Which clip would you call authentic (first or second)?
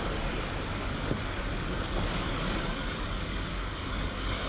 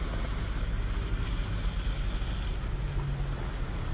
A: second